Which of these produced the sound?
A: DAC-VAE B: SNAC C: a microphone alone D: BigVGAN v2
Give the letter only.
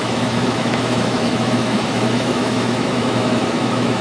A